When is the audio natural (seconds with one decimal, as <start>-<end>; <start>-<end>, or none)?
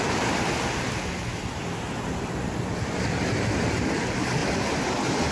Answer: 0.0-5.3